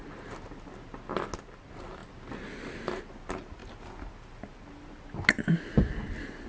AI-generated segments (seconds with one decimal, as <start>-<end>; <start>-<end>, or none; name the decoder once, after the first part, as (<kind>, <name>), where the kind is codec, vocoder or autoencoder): none